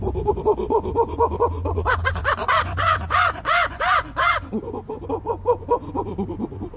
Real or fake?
fake